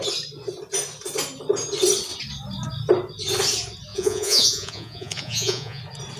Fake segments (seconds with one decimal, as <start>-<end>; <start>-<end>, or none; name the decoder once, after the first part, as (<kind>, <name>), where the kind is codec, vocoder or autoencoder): 3.9-5.8 (vocoder, Vocos)